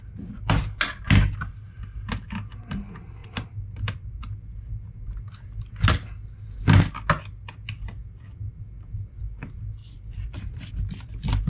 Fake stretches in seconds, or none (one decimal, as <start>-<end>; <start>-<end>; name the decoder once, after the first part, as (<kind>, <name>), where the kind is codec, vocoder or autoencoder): 3.2-4.2 (vocoder, BigVGAN v2); 9.8-10.7